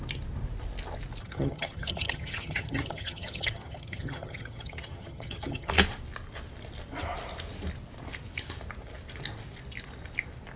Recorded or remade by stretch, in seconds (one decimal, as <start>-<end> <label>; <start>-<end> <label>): 0.0-1.2 recorded; 1.2-5.7 remade; 5.7-10.6 recorded